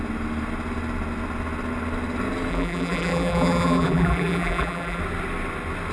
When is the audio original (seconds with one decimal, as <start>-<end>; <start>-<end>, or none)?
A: 0.0-2.5; 5.0-5.9